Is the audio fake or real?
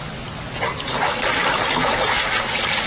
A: real